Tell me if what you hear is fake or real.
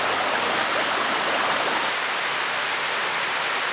real